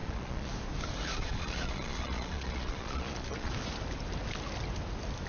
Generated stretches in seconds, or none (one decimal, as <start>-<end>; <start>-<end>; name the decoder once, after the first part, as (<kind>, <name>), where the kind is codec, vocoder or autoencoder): 0.0-0.5 (vocoder, Vocos); 1.2-3.5